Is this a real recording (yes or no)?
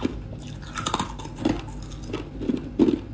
yes